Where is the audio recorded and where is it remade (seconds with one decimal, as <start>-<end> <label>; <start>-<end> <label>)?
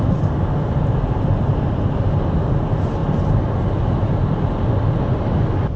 0.0-5.8 recorded